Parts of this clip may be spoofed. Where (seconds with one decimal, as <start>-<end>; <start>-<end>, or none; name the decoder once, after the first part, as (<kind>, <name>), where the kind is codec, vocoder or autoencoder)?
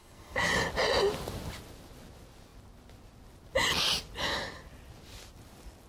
0.0-0.5 (codec, SNAC)